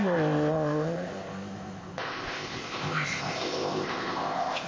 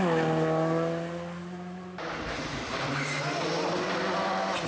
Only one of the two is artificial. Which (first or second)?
first